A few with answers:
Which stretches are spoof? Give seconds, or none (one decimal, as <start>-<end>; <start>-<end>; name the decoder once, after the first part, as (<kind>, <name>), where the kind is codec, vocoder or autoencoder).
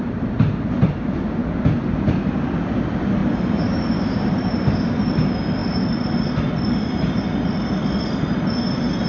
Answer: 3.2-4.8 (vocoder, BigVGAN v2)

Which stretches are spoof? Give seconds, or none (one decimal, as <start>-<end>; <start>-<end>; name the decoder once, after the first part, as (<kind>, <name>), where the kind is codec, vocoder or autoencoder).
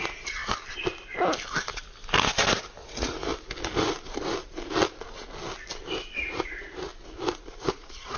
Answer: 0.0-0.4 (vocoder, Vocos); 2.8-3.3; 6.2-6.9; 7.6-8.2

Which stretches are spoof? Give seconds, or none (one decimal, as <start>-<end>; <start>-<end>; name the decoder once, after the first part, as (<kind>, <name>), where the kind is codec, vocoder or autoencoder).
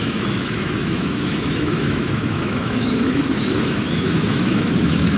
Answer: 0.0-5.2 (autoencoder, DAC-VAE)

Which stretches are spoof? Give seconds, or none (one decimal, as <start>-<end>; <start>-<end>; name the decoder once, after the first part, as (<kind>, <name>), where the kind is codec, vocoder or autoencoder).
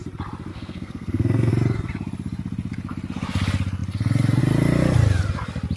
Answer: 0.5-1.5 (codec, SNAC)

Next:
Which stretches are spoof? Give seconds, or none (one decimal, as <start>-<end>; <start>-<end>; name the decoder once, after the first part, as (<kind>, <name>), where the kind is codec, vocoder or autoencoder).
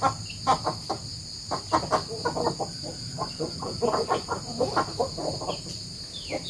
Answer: 3.1-4.4 (vocoder, Vocos)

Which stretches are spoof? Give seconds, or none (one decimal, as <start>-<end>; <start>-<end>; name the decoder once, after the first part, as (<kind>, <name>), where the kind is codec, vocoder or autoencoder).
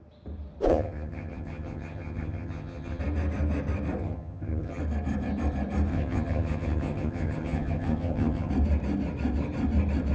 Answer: 0.7-3.0 (vocoder, HiFi-GAN); 4.0-4.8; 5.9-8.5